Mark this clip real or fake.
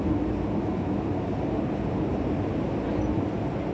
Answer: real